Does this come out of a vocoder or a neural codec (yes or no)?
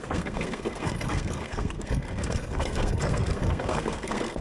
yes